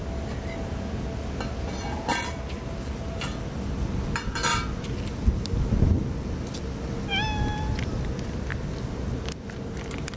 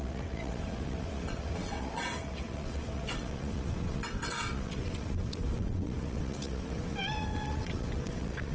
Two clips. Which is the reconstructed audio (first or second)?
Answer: second